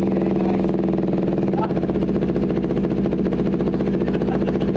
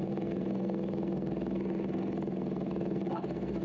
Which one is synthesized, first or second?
second